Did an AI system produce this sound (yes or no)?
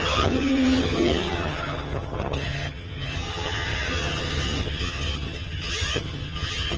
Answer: yes